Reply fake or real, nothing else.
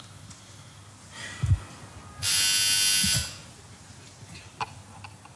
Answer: real